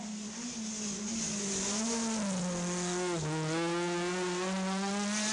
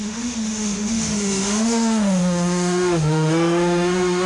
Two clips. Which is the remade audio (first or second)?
second